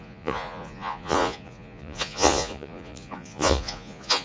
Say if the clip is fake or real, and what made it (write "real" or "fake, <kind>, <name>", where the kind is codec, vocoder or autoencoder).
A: fake, vocoder, Vocos